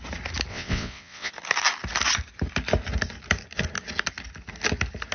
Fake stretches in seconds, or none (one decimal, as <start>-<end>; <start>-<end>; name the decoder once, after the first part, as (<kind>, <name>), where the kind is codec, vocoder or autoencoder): 0.5-1.3 (vocoder, WaveNeXt)